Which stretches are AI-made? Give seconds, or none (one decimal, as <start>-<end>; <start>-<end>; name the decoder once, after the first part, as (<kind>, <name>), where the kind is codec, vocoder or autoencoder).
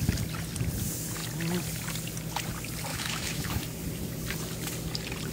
2.9-3.6 (autoencoder, DAC-VAE)